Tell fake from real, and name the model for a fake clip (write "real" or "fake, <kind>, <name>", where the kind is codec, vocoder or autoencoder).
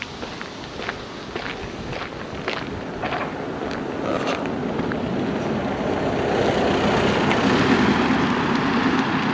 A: real